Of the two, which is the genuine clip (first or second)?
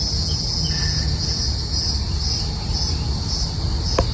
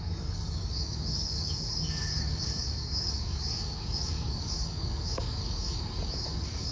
first